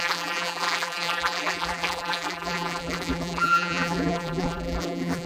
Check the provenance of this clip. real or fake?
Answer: fake